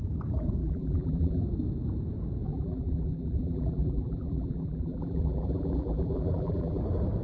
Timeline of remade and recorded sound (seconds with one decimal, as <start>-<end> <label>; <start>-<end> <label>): 0.0-0.6 recorded; 0.6-1.4 remade; 1.4-2.5 recorded; 2.5-6.8 remade; 6.8-7.2 recorded

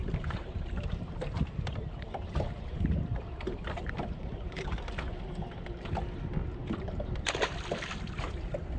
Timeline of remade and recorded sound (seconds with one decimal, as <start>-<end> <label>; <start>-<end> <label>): 0.0-4.8 remade; 4.8-6.6 recorded; 6.6-7.4 remade; 7.4-8.8 recorded

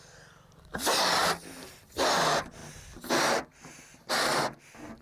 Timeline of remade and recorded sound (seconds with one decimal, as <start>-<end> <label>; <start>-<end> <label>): 0.0-3.9 recorded; 3.9-4.6 remade; 4.6-5.0 recorded

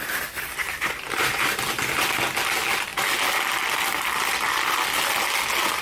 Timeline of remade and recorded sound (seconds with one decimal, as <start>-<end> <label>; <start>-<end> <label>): 0.0-0.6 recorded; 0.6-1.6 remade; 1.6-5.8 recorded

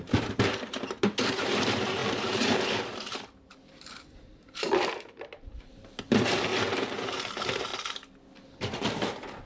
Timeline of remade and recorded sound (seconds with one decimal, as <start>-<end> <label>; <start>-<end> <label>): 0.0-6.5 remade; 6.5-7.0 recorded; 7.0-7.7 remade; 7.7-8.5 recorded; 8.5-9.5 remade